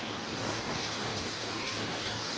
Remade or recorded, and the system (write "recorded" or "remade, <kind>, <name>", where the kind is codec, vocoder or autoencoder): remade, codec, DAC